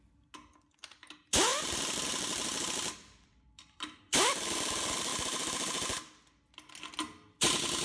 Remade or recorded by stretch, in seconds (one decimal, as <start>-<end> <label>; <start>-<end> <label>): 0.0-1.5 recorded; 1.5-4.3 remade; 4.3-5.1 recorded; 5.1-6.1 remade; 6.1-7.8 recorded